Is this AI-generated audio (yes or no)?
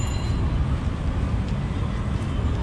no